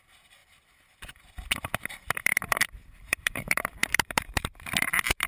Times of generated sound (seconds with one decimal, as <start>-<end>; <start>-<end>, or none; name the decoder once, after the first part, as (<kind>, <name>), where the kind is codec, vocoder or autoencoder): 2.8-4.8 (vocoder, BigVGAN v2)